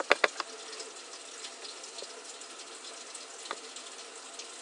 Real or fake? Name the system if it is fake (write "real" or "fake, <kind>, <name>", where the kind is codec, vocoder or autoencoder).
real